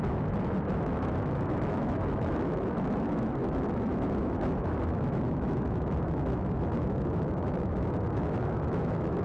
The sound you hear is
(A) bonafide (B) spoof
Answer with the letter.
B